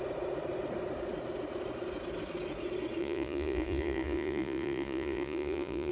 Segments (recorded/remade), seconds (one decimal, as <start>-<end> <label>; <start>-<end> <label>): 0.0-3.0 recorded; 3.0-5.9 remade